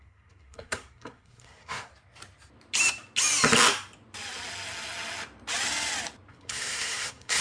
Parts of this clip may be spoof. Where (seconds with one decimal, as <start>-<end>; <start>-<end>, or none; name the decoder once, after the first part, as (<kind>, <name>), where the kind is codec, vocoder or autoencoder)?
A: 0.0-1.9 (codec, SNAC); 6.3-7.4